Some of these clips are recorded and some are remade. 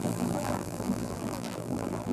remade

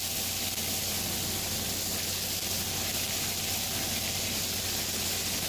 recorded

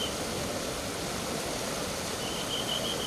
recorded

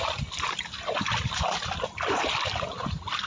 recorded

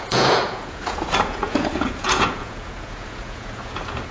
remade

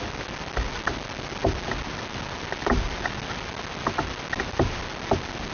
recorded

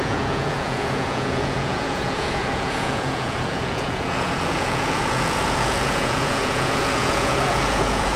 remade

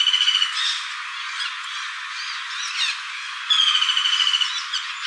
remade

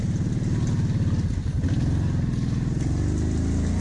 recorded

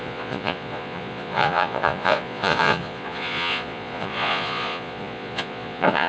remade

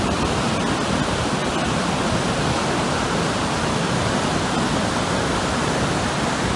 recorded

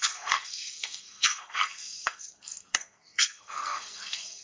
remade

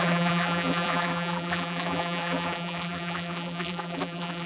remade